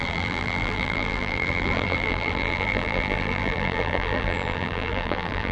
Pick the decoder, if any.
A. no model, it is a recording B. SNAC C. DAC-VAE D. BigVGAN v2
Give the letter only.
D